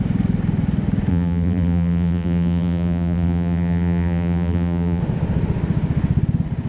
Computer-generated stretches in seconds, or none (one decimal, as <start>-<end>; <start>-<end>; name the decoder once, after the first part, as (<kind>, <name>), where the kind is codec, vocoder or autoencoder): 1.1-5.0 (vocoder, BigVGAN v2)